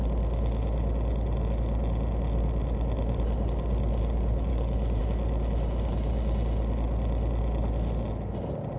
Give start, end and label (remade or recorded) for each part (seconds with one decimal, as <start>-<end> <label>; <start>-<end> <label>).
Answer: 0.0-4.5 recorded; 4.5-5.0 remade; 5.0-8.8 recorded